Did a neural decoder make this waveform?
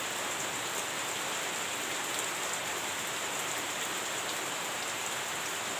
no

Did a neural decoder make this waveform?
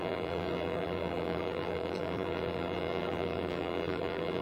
yes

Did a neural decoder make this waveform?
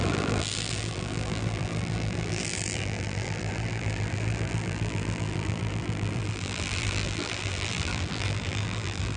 yes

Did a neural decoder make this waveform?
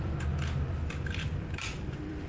yes